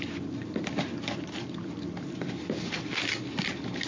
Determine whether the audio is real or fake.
real